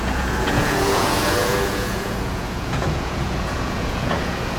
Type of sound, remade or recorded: remade